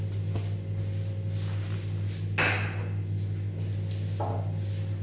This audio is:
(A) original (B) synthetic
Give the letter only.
A